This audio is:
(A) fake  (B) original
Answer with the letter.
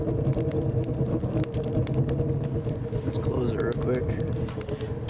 B